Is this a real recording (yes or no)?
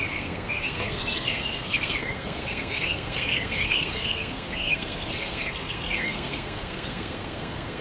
no